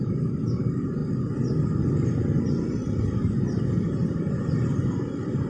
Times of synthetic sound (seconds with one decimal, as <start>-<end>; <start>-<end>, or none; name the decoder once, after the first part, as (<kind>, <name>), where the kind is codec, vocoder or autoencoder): none